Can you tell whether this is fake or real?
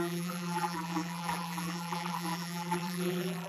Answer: fake